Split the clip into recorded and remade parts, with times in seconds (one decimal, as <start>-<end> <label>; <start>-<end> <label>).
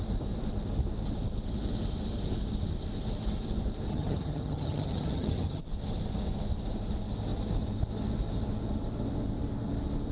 0.0-3.9 recorded; 3.9-5.6 remade; 5.6-10.1 recorded